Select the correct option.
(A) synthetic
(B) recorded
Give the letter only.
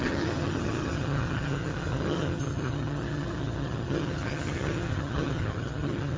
A